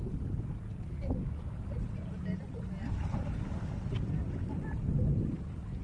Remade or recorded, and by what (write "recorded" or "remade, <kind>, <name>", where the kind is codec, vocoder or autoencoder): recorded